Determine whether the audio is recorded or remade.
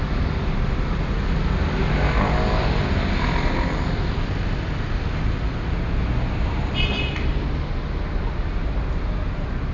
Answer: recorded